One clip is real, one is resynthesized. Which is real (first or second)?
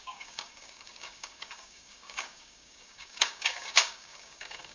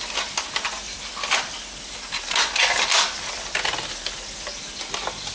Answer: second